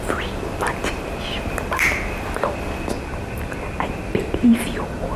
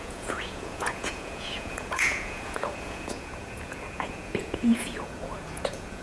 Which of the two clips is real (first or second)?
first